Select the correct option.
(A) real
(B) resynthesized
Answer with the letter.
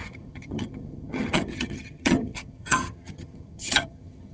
B